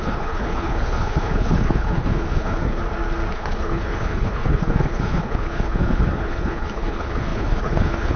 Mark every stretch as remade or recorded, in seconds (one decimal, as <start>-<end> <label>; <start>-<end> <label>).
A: 0.0-2.8 remade; 2.8-3.3 recorded; 3.3-8.2 remade